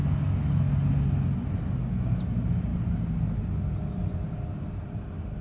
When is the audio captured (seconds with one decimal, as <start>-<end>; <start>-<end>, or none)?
0.0-5.4